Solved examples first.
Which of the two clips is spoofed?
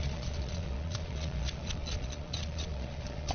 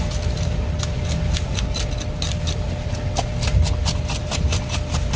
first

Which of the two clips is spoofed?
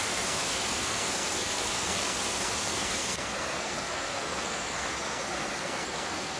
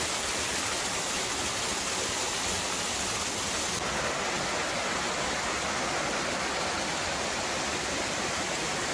first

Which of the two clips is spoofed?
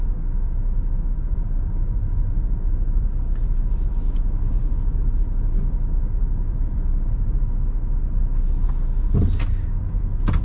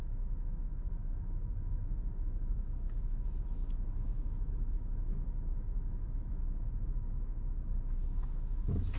second